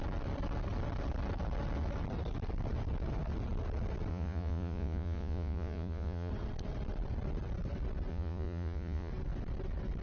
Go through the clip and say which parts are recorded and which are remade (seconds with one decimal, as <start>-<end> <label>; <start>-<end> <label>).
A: 0.0-4.1 recorded; 4.1-6.3 remade; 6.3-8.1 recorded; 8.1-9.1 remade; 9.1-10.0 recorded